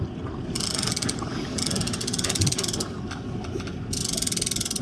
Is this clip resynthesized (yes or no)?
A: no